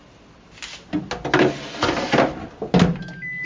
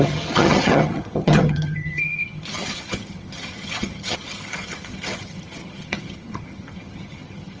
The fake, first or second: second